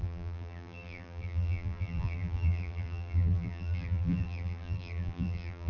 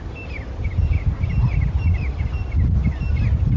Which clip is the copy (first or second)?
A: first